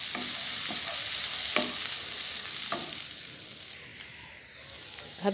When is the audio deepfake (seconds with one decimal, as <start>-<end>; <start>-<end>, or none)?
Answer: none